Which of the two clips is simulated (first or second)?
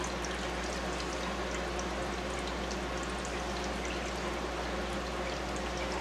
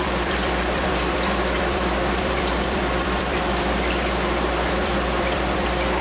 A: second